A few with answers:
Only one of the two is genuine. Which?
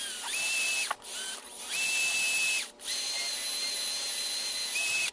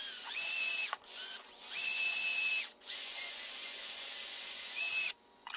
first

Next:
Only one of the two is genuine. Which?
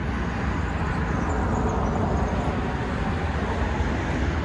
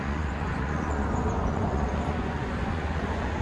first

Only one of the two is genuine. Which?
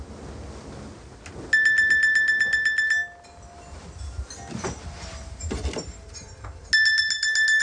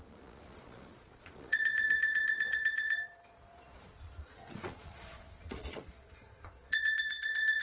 first